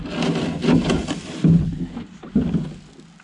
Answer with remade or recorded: recorded